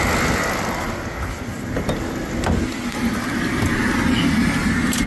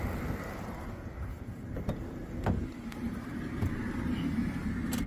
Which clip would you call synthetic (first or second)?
second